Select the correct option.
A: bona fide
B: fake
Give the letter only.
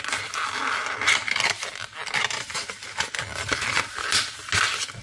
A